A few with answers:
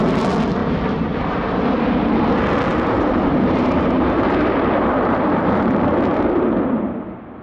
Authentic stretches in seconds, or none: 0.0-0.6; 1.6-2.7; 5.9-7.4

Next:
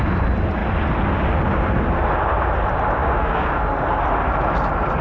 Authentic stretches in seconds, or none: 0.0-3.0; 3.6-5.0

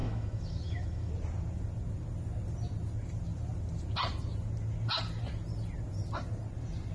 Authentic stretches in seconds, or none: 1.1-6.9

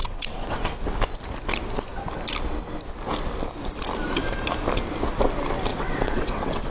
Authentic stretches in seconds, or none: 0.6-5.7

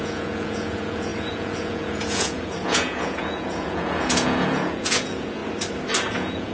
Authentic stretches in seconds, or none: 5.4-6.1